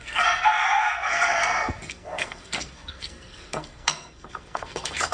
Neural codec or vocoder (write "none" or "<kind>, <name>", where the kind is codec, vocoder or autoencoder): codec, SNAC